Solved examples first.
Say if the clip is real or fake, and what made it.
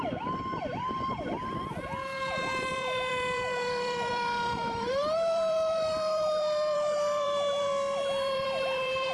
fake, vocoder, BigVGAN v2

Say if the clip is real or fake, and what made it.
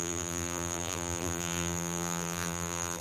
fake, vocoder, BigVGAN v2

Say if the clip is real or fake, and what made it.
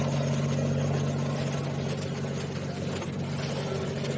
real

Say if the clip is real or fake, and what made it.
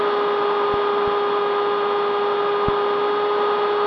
real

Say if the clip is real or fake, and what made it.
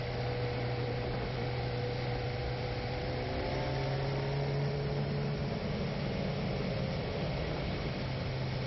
real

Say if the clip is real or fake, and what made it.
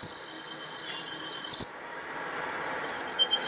real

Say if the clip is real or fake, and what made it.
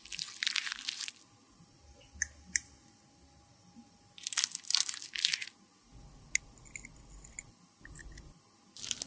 real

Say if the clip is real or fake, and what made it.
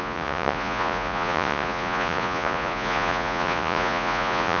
fake, vocoder, Vocos